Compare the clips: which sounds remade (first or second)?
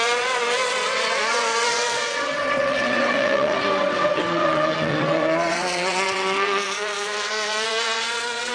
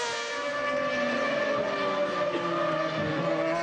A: first